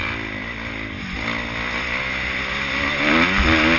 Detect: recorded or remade recorded